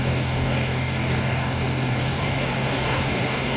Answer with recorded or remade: remade